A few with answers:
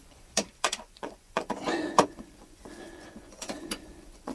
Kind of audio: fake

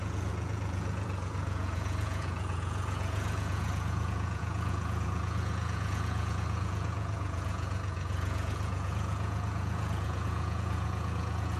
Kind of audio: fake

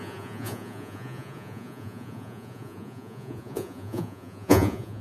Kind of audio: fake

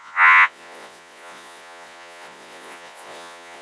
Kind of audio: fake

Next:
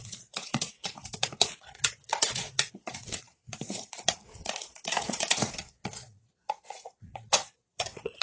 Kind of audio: fake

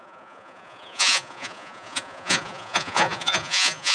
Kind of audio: fake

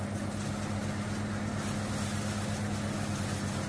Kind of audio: real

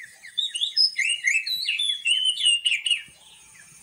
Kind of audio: fake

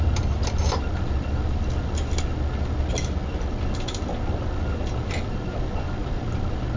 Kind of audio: real